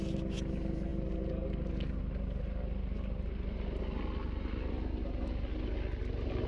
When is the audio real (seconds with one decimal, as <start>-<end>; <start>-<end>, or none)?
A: 0.0-6.5